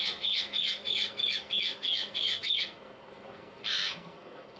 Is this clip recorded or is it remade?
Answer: remade